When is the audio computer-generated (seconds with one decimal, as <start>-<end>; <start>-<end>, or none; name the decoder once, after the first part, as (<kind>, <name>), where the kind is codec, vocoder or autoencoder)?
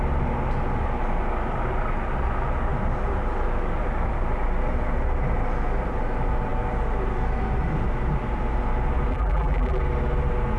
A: 9.1-9.8 (vocoder, BigVGAN v2)